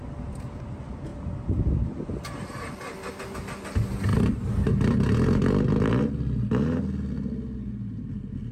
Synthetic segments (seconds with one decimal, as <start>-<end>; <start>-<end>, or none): none